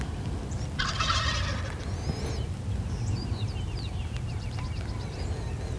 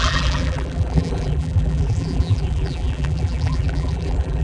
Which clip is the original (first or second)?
first